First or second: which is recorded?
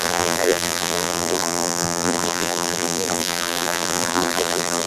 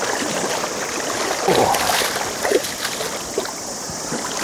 second